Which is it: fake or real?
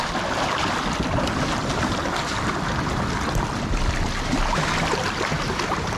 real